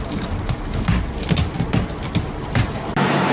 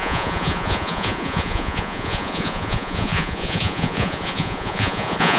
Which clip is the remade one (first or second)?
second